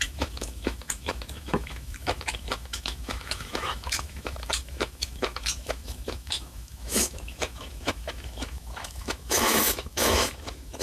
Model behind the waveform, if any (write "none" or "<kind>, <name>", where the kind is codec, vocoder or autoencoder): autoencoder, DAC-VAE